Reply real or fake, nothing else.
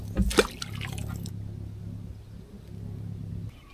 real